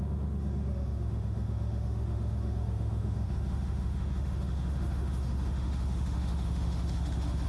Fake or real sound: fake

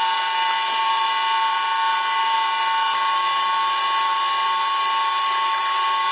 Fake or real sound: real